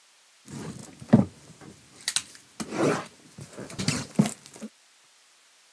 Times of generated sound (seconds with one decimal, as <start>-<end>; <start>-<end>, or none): none